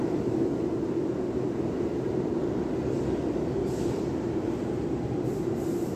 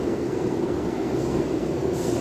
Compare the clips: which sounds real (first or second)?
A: first